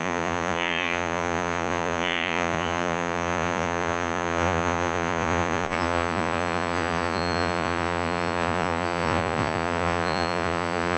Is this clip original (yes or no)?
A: no